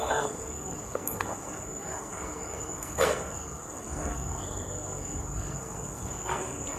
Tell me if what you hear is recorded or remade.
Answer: remade